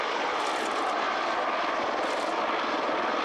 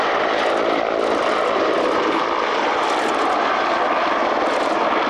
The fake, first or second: second